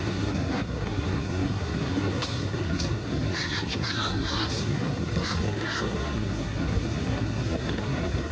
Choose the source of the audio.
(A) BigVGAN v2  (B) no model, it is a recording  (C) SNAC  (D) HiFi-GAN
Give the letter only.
C